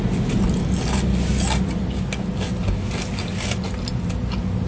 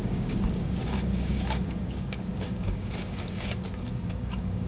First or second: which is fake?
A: second